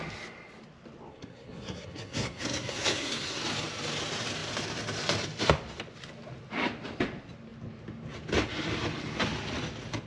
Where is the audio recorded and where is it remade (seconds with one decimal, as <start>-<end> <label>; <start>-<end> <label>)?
0.0-1.1 recorded; 1.1-3.4 remade; 3.4-10.1 recorded